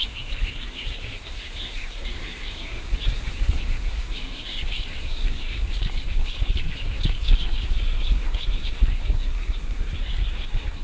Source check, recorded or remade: remade